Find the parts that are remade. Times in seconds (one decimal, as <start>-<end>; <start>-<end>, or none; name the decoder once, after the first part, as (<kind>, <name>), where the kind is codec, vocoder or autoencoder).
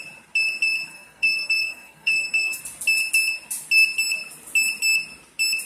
0.9-2.6 (codec, SNAC)